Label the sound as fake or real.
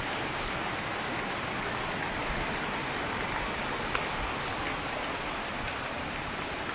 real